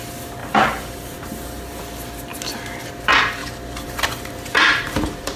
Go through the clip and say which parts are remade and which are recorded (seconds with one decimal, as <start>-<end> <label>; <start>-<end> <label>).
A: 0.0-0.4 recorded; 0.4-1.8 remade; 1.8-3.4 recorded; 3.4-5.4 remade